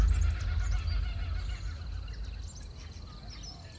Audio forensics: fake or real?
real